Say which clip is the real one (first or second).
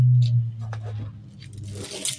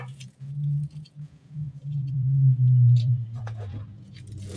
first